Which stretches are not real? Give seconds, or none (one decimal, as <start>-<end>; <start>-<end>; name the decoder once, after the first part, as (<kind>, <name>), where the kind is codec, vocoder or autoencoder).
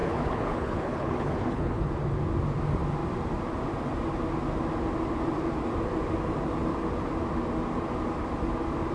0.0-1.9 (codec, HILCodec)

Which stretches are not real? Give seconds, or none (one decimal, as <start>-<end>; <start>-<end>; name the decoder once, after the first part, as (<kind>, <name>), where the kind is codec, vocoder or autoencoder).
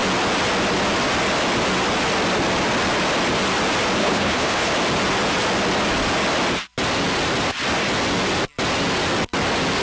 4.0-4.7 (codec, HILCodec)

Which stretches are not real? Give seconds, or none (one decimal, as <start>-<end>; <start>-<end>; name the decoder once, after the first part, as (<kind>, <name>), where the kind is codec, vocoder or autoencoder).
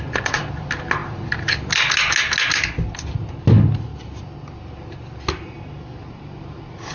none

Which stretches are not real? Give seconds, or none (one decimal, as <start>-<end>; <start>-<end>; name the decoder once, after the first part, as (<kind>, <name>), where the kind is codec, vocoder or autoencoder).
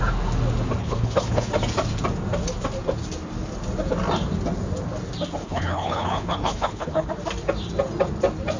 0.8-1.5 (codec, HILCodec); 5.4-7.1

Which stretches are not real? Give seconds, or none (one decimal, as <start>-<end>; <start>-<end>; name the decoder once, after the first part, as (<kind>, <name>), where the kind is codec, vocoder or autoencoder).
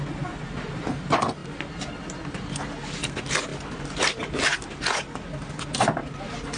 none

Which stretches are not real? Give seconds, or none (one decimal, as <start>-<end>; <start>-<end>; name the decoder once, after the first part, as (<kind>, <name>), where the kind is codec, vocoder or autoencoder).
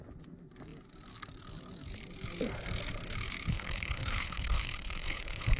3.5-5.6 (codec, HILCodec)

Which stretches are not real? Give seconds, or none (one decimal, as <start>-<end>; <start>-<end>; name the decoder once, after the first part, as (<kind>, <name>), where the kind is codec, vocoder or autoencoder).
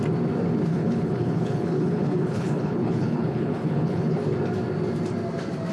0.7-4.1 (codec, HILCodec)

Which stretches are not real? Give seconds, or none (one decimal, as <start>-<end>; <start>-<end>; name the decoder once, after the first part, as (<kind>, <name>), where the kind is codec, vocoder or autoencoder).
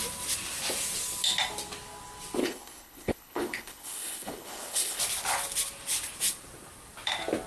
2.4-5.0 (codec, HILCodec)